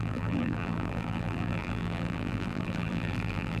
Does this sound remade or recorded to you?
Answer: remade